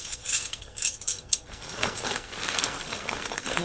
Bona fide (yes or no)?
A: no